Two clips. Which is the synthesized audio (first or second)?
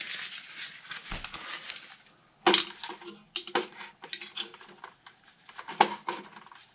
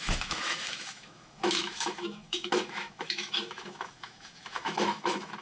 second